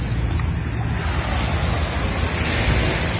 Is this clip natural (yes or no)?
yes